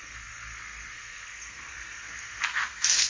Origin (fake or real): fake